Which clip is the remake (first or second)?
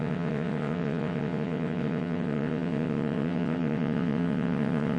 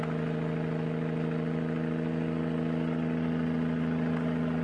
first